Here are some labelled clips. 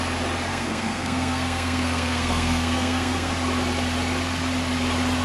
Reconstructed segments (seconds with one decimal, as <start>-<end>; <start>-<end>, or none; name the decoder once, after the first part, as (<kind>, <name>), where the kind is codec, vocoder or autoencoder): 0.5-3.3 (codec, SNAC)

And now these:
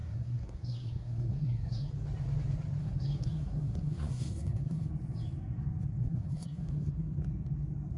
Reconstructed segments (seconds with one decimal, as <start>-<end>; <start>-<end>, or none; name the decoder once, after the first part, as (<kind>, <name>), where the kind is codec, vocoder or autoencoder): 0.0-1.9 (codec, SNAC); 2.8-4.9; 6.0-7.2

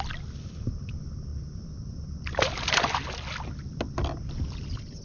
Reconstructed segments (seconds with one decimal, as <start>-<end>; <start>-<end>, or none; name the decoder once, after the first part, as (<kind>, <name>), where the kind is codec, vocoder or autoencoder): none

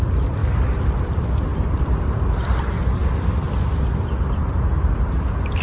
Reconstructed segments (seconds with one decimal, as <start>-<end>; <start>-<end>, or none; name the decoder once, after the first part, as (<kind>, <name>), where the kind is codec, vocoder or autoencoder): none

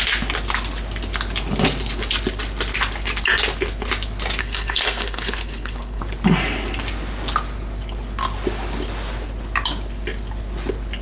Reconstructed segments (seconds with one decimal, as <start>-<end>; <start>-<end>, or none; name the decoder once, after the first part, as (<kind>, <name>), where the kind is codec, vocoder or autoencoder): 4.4-6.0 (codec, SNAC)

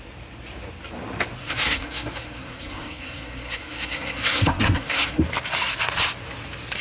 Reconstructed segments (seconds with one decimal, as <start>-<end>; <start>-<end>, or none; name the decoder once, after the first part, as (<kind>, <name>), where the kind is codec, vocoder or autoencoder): 1.4-5.2 (codec, SNAC)

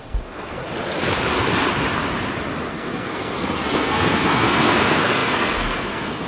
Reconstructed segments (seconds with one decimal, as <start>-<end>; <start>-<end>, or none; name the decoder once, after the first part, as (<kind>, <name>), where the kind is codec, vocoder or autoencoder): 0.0-0.6 (codec, SNAC); 2.7-6.3